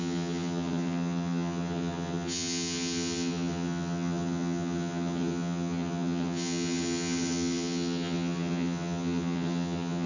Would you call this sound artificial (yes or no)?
yes